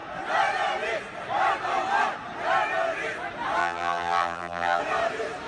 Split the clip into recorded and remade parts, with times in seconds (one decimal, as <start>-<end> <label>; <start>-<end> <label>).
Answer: 0.0-3.6 recorded; 3.6-4.8 remade; 4.8-5.5 recorded